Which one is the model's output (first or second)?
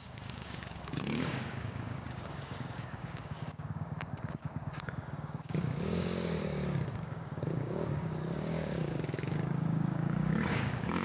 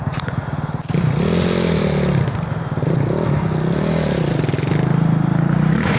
first